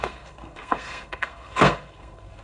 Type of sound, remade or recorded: remade